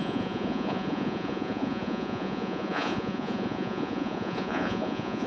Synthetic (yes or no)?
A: yes